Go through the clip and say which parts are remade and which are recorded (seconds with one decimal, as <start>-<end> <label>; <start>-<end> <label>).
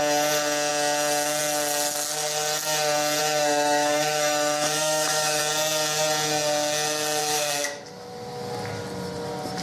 0.0-3.2 recorded; 3.2-5.4 remade; 5.4-7.2 recorded; 7.2-7.8 remade; 7.8-9.6 recorded